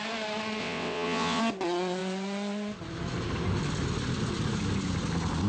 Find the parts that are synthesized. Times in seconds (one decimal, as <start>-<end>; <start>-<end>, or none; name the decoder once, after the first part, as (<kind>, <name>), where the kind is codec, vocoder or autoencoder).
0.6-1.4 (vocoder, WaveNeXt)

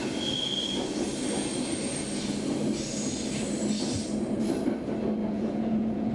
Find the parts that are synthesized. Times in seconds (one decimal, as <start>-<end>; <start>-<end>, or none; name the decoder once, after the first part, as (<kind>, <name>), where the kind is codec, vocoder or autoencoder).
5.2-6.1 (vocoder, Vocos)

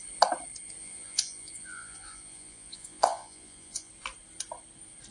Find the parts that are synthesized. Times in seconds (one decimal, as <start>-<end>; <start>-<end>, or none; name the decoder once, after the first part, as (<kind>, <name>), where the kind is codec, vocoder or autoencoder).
0.8-3.9 (vocoder, Vocos)

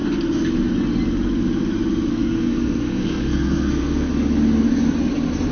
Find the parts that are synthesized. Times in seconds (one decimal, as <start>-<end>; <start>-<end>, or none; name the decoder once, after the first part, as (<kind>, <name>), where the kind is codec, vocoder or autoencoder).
2.1-4.1 (codec, SNAC)